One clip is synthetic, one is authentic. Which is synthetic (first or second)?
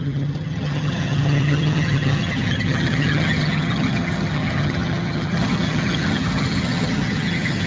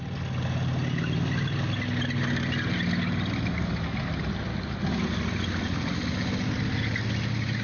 first